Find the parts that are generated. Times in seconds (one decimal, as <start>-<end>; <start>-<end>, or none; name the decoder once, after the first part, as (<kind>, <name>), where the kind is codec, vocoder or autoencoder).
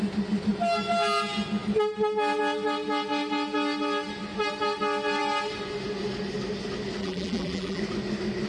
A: 7.0-7.8 (vocoder, BigVGAN v2)